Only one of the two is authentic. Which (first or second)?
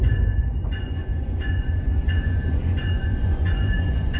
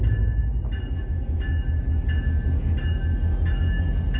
second